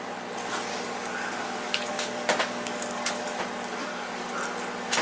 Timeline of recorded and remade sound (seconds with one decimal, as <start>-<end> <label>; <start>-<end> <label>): 0.0-0.7 recorded; 0.7-3.4 remade; 3.4-3.8 recorded; 3.8-4.3 remade; 4.3-5.0 recorded